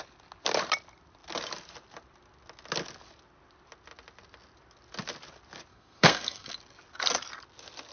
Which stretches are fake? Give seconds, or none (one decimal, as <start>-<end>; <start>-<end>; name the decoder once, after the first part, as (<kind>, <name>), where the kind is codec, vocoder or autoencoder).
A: 5.7-6.5 (codec, SNAC)